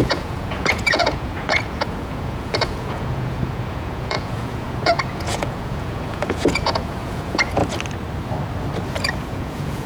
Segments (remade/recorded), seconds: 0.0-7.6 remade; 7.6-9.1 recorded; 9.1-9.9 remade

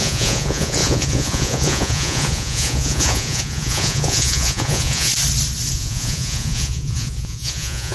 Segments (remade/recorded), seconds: 0.0-5.1 remade; 5.1-5.7 recorded; 5.7-7.9 remade

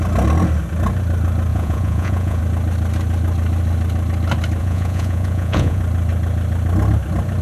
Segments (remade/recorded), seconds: 0.0-1.5 recorded; 1.5-2.4 remade; 2.4-4.6 recorded; 4.6-5.8 remade; 5.8-7.4 recorded

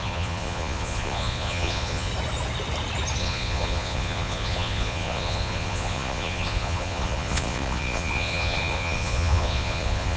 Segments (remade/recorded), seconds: 0.0-2.1 remade; 2.1-3.2 recorded; 3.2-10.2 remade

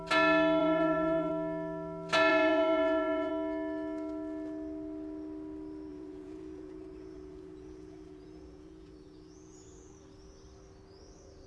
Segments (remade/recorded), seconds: 0.0-0.6 recorded; 0.6-1.3 remade; 1.3-2.3 recorded; 2.3-3.3 remade; 3.3-5.9 recorded; 5.9-9.9 remade; 9.9-11.5 recorded

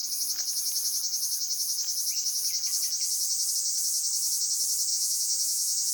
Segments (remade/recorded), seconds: 0.0-4.9 recorded; 4.9-5.9 remade

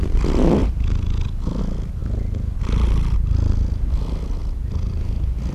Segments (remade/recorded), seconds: 0.0-5.5 recorded